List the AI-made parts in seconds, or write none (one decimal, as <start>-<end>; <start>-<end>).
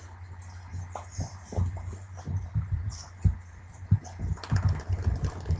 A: 0.7-4.0